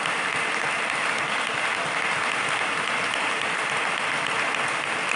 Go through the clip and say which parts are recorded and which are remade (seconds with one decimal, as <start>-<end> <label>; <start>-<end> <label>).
0.0-5.2 recorded